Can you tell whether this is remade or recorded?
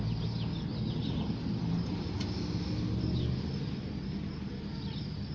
recorded